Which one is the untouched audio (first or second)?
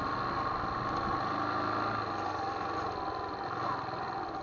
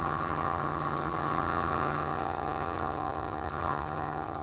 first